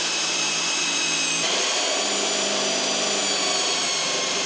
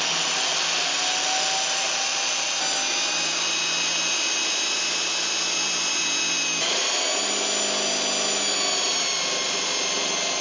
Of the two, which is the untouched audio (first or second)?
second